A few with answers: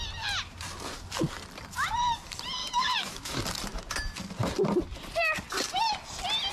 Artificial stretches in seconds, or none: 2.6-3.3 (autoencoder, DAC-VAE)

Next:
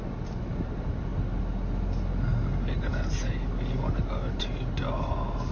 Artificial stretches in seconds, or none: none